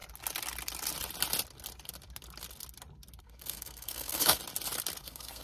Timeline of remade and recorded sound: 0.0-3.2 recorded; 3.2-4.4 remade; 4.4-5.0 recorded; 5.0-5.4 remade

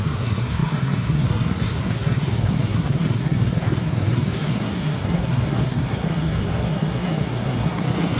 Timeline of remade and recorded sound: 0.0-8.2 remade

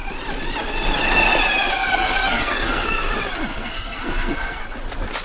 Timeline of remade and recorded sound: 0.0-1.7 recorded; 1.7-3.1 remade; 3.1-3.5 recorded; 3.5-4.6 remade; 4.6-5.2 recorded

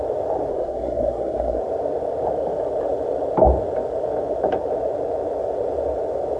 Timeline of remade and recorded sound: 0.0-0.5 recorded; 0.5-1.6 remade; 1.6-6.4 recorded